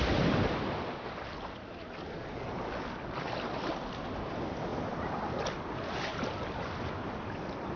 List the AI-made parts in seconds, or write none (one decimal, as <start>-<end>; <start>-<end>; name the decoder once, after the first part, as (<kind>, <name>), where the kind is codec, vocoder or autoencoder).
none